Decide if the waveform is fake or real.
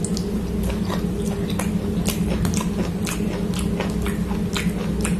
real